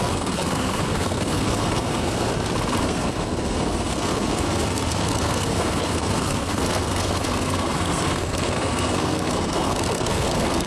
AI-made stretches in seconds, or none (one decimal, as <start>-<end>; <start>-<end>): 0.0-2.3; 2.8-10.7